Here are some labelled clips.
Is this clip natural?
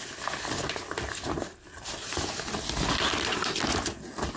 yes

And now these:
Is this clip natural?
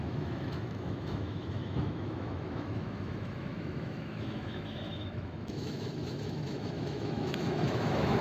no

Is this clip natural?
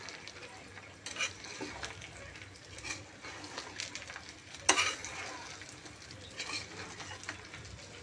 yes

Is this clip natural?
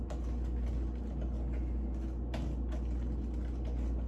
yes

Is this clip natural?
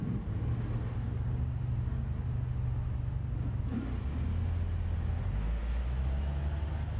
yes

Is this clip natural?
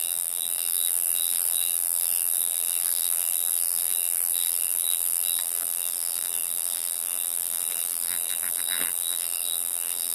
no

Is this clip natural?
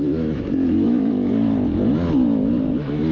no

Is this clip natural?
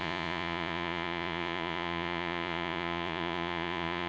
no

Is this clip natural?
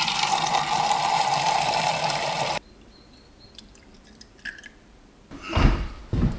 no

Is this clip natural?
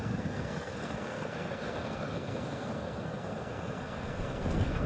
no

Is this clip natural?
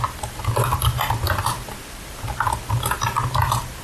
yes